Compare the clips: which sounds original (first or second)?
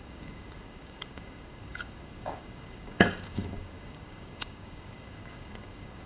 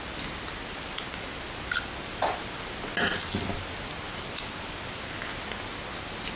second